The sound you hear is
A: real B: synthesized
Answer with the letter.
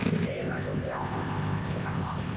B